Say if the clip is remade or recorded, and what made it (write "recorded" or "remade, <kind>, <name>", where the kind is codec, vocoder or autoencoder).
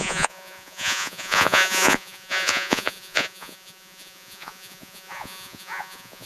remade, vocoder, Vocos